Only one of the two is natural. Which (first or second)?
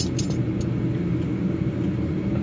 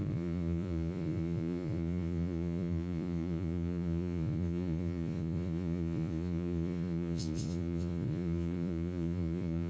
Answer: first